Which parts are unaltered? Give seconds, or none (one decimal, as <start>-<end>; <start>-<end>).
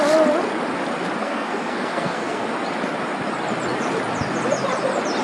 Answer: 0.0-1.2; 2.5-5.2